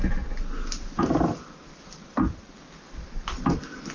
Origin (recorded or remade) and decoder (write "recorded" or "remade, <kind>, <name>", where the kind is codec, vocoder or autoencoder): recorded